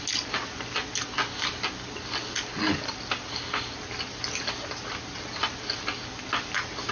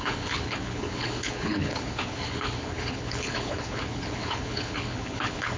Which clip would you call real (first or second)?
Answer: first